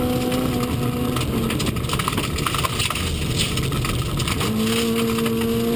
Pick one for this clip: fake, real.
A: real